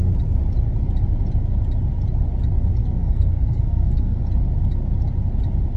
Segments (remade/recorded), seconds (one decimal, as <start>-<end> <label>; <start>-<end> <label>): 0.0-2.8 recorded; 2.8-4.2 remade; 4.2-5.8 recorded